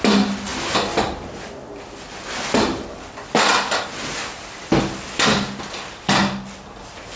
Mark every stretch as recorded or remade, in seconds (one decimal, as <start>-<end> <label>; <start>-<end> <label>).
0.0-7.2 recorded